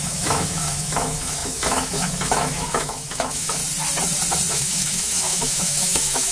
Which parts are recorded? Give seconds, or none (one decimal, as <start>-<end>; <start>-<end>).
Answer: 3.6-4.5

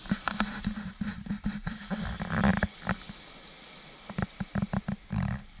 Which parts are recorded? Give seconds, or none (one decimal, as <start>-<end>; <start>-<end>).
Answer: 1.8-5.6

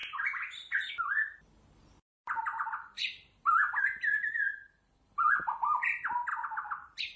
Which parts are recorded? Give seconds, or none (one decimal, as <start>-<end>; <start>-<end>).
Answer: 6.3-7.2

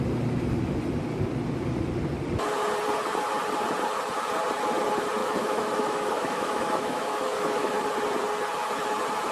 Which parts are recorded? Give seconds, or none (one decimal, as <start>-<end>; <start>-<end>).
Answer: 0.0-5.2; 7.7-9.3

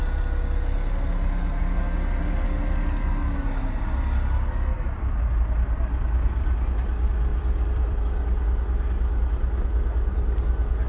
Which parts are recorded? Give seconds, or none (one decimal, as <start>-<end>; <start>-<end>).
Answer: 0.0-7.3; 8.0-10.9

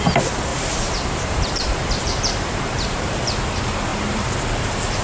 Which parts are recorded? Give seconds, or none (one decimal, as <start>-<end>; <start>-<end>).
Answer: 0.0-0.5; 3.5-3.9; 4.4-5.0

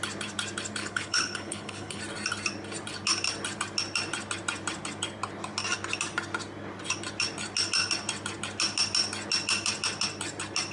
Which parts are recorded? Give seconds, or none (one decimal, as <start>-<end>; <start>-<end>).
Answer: 0.0-0.8; 2.0-10.7